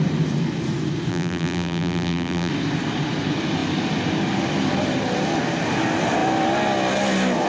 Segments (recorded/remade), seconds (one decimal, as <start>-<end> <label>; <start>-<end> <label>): 0.0-1.1 recorded; 1.1-2.5 remade; 2.5-7.5 recorded